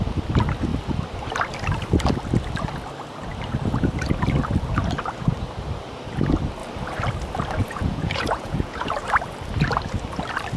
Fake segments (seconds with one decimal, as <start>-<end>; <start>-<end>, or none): 7.6-8.9